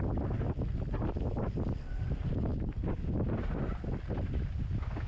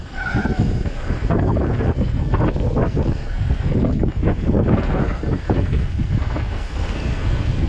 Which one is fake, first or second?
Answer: second